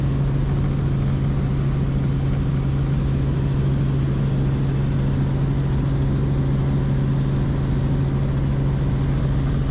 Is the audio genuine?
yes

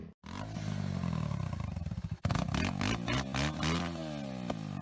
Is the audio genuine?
yes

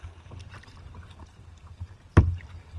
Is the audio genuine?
no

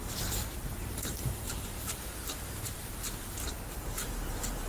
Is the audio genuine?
no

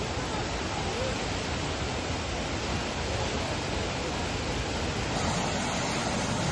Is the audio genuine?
yes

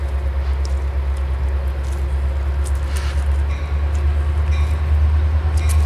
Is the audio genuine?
yes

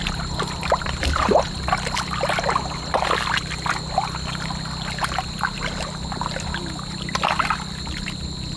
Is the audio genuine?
yes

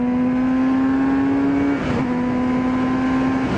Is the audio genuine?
yes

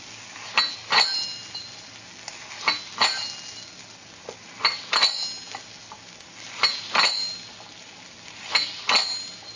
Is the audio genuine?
yes